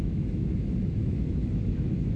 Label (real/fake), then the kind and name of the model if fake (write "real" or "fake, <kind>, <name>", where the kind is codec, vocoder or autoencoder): fake, autoencoder, DAC-VAE